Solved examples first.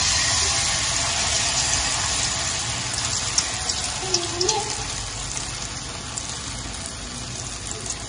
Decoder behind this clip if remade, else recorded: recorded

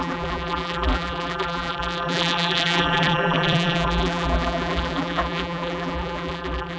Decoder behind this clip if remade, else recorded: remade, vocoder, BigVGAN v2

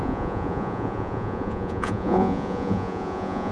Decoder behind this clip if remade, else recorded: remade, vocoder, Vocos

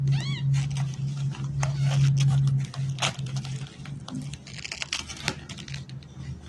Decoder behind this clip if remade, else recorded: recorded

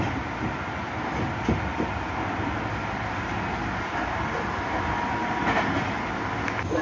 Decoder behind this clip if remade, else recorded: recorded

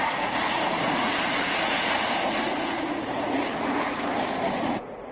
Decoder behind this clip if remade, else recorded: remade, vocoder, Vocos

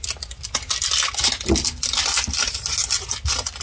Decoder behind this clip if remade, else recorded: recorded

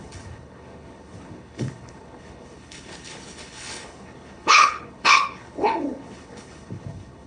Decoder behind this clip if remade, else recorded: remade, codec, HILCodec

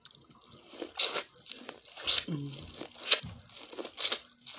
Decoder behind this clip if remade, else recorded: recorded